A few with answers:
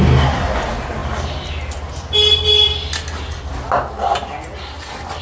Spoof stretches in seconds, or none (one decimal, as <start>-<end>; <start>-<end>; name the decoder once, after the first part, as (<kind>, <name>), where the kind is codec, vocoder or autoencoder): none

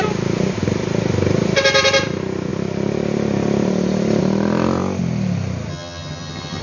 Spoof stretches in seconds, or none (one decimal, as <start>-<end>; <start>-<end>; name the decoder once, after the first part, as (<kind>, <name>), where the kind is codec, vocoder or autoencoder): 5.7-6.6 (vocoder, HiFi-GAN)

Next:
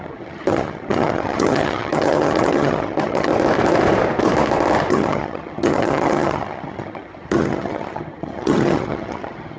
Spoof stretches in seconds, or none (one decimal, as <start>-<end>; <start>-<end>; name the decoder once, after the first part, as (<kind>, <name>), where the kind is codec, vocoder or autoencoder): 0.0-3.3 (vocoder, HiFi-GAN); 4.9-9.6